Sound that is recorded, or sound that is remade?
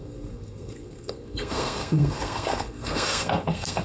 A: remade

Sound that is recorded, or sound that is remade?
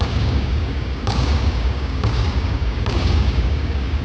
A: remade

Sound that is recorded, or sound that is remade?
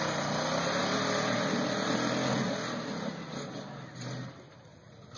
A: recorded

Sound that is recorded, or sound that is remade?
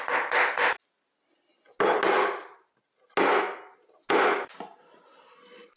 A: recorded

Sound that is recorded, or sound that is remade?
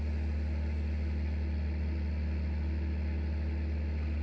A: recorded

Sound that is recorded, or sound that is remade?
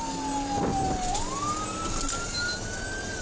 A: recorded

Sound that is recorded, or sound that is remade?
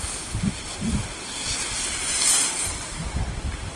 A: recorded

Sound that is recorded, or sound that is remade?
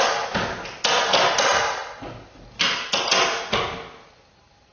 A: recorded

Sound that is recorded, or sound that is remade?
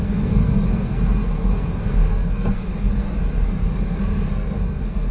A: remade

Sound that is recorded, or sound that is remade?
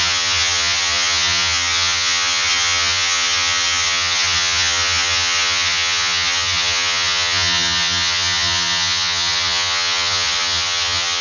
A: remade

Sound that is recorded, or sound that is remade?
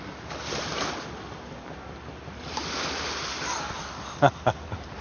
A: recorded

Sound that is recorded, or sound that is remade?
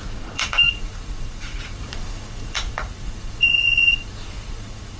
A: remade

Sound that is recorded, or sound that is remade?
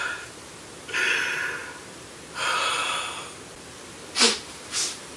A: recorded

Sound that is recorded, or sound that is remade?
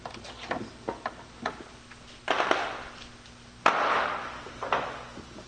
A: recorded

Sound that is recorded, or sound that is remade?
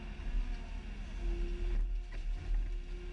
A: recorded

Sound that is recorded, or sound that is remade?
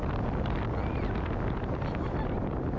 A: recorded